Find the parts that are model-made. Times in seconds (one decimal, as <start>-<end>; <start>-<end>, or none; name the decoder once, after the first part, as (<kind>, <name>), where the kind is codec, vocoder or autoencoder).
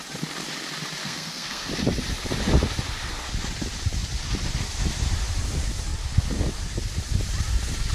1.0-1.7 (codec, SNAC)